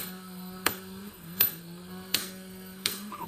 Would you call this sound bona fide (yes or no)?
no